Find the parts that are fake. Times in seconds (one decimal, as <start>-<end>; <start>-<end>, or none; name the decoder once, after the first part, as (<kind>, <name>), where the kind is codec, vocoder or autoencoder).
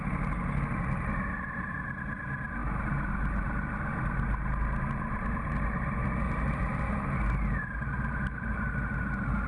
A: none